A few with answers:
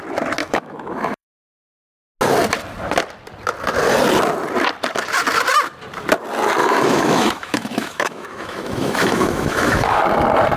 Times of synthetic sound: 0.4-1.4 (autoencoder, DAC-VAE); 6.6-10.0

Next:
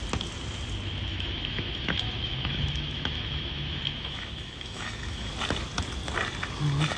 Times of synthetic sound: 1.1-5.3 (autoencoder, DAC-VAE)